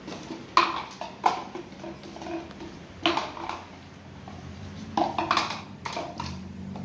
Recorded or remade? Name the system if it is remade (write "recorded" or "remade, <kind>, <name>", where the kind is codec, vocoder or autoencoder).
recorded